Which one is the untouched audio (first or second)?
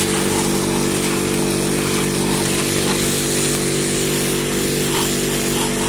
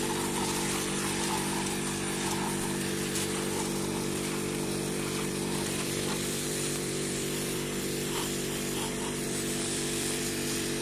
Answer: first